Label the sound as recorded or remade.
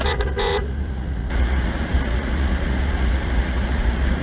remade